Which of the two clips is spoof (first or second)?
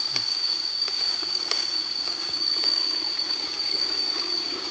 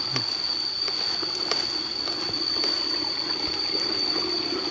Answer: first